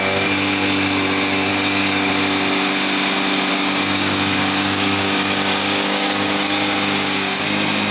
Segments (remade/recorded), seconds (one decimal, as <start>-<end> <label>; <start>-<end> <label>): 0.0-1.5 recorded; 1.5-2.1 remade; 2.1-3.5 recorded; 3.5-7.4 remade; 7.4-7.9 recorded